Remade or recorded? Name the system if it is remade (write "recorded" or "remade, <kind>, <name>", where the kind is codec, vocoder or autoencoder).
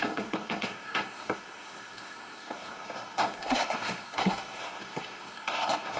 remade, codec, SNAC